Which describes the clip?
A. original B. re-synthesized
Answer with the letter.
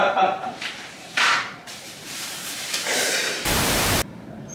B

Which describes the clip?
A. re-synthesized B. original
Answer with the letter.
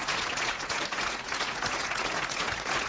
A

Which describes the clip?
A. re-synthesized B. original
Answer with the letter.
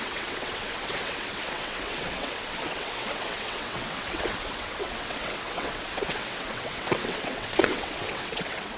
A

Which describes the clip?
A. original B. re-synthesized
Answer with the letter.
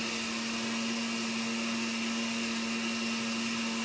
A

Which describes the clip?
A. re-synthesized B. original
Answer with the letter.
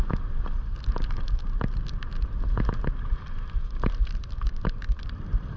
B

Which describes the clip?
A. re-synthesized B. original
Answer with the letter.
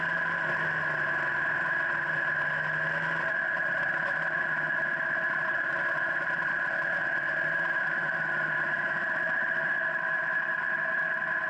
B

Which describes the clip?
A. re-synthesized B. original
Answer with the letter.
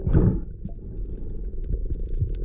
B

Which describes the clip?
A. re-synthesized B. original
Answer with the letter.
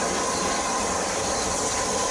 B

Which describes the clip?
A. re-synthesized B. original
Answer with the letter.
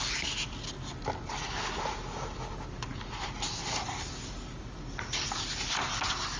B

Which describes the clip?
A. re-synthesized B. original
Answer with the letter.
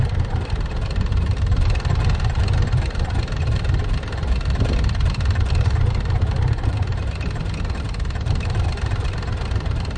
B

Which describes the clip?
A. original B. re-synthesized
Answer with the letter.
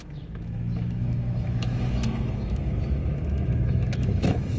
B